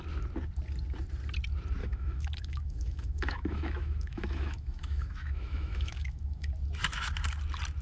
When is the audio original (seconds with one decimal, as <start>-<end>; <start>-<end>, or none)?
0.0-1.8; 6.5-7.8